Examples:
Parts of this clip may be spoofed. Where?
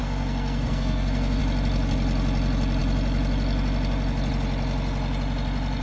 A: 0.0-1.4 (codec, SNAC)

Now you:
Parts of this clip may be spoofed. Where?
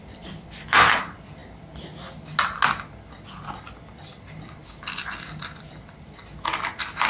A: none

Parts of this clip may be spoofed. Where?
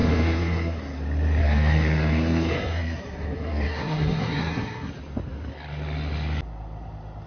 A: 0.0-0.8 (codec, SNAC); 1.4-4.9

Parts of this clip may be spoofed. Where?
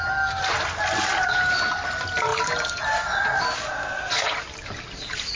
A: none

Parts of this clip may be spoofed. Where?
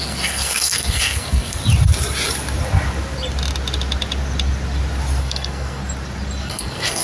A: 0.0-1.6 (codec, SNAC); 5.2-5.8; 6.4-7.0